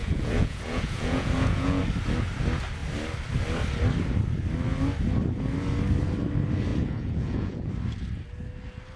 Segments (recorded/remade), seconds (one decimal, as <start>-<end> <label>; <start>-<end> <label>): 0.0-1.8 remade; 1.8-6.7 recorded; 6.7-7.7 remade; 7.7-9.0 recorded